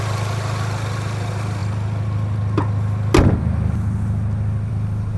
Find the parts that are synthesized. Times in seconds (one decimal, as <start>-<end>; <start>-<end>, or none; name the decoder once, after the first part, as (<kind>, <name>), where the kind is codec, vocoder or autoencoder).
none

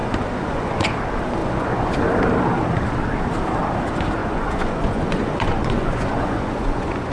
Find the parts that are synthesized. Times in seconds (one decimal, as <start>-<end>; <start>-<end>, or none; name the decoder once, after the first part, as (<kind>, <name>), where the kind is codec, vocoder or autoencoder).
0.0-0.9 (vocoder, Vocos); 1.4-1.9; 4.2-7.1

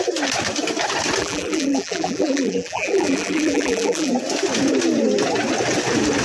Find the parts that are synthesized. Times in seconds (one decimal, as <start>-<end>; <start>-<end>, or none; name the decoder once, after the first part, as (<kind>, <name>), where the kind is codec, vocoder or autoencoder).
1.2-4.1 (vocoder, BigVGAN v2)

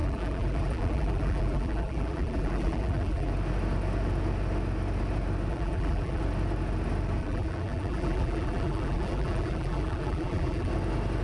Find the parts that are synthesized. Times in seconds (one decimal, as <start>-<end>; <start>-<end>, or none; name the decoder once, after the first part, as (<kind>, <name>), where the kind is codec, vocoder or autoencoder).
0.0-3.3 (vocoder, BigVGAN v2); 5.5-6.2; 7.2-10.7

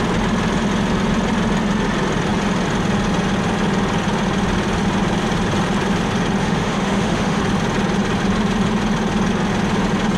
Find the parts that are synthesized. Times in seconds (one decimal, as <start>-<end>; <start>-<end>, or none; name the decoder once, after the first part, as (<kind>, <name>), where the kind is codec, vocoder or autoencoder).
6.4-7.4 (autoencoder, DAC-VAE)

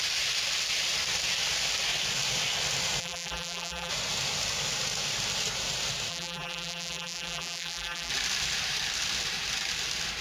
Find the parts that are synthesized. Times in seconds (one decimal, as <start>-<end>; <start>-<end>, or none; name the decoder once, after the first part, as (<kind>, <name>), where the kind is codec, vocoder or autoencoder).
3.0-3.9 (vocoder, BigVGAN v2); 6.1-8.1